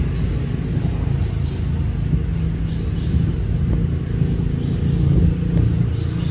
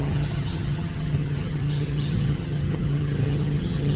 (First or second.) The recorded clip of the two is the first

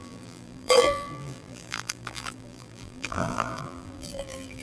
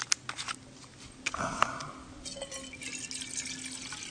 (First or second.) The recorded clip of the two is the second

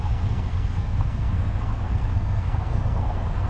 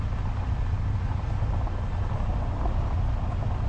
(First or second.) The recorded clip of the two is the second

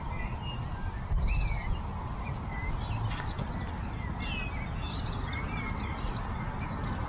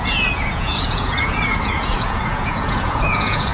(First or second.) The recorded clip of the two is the first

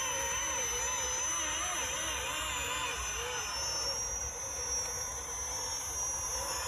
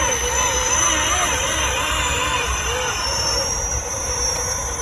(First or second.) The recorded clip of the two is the first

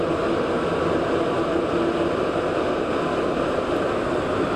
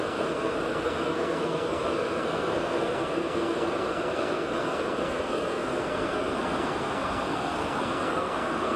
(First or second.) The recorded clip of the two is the first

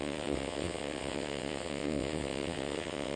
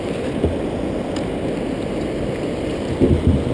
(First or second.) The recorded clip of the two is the second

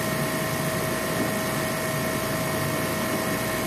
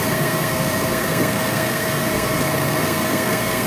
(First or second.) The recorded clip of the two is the first